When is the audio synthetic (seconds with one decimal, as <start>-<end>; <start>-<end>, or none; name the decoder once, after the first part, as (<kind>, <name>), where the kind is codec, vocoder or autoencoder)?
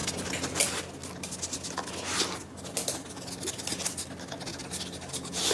4.5-5.5 (vocoder, BigVGAN v2)